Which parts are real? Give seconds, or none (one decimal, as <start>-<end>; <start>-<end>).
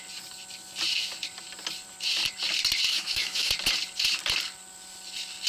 0.0-2.9; 3.5-5.5